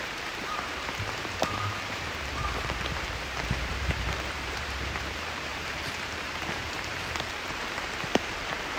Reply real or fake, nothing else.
fake